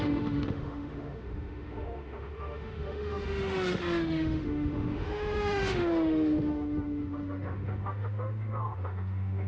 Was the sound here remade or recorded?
remade